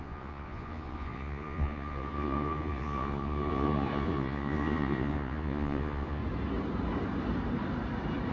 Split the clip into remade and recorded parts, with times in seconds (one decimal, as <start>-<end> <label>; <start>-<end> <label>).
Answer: 0.0-6.2 remade; 6.2-8.3 recorded